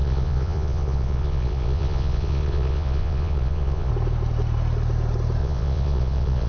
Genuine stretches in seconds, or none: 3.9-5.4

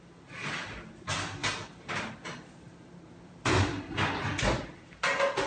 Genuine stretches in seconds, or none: 0.0-5.5

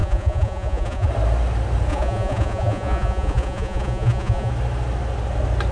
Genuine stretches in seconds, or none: 1.1-1.9; 4.5-5.7